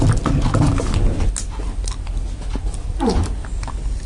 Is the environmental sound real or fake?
real